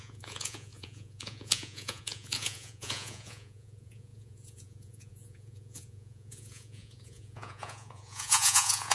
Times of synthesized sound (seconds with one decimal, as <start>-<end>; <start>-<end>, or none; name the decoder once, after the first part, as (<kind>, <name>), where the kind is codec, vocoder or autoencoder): 0.0-8.9 (vocoder, Vocos)